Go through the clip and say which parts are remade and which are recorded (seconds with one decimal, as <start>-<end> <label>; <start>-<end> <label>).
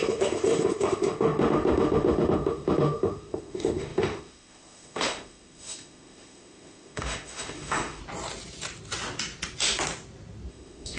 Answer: 0.0-8.0 remade; 8.0-10.5 recorded; 10.5-11.0 remade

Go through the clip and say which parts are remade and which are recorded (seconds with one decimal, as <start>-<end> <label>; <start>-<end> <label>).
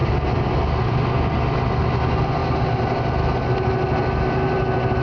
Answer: 0.0-5.0 recorded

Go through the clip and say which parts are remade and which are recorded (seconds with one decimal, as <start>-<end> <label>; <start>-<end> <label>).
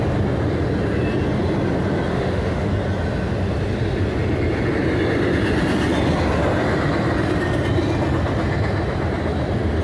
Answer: 0.0-2.1 recorded; 2.1-2.7 remade; 2.7-9.8 recorded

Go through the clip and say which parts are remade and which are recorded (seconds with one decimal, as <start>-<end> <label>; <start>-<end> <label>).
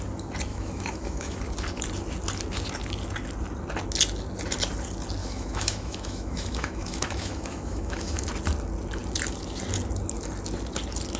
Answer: 0.0-0.5 recorded; 0.5-1.4 remade; 1.4-5.2 recorded; 5.2-8.3 remade; 8.3-11.2 recorded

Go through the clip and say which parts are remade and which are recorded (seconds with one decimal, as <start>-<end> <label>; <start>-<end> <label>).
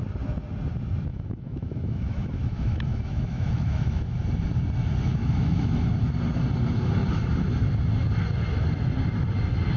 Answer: 0.0-1.1 recorded; 1.1-4.2 remade; 4.2-5.1 recorded; 5.1-5.9 remade; 5.9-9.8 recorded